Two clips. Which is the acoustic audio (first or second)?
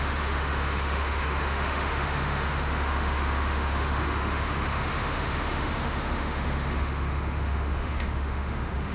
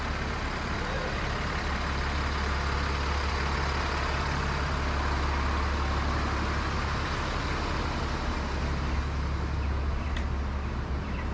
second